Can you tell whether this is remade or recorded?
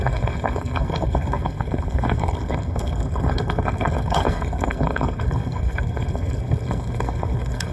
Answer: remade